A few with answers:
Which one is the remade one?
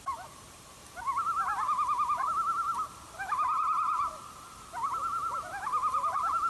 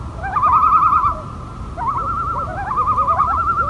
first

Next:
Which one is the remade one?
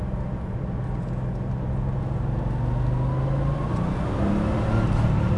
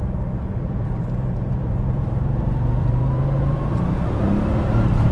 second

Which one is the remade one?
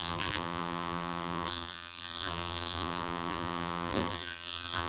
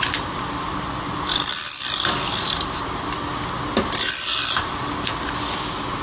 first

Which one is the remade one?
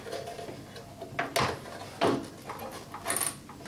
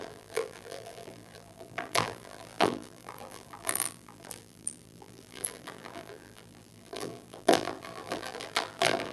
second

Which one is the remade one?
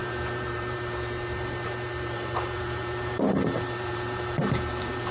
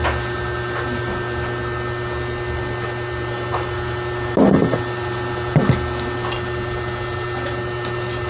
first